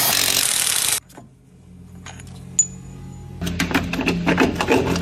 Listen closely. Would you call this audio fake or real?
real